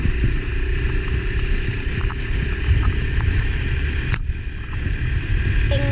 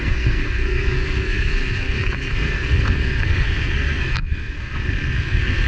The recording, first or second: first